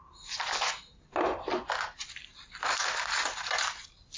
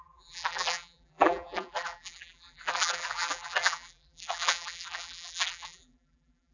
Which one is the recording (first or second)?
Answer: first